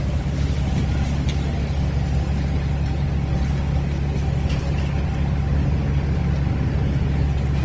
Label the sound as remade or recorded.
recorded